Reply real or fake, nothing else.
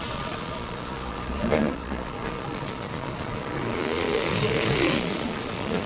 fake